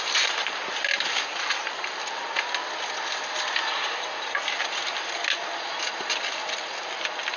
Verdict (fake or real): real